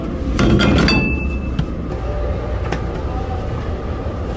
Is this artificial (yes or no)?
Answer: no